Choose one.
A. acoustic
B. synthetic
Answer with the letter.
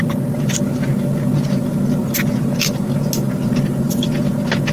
A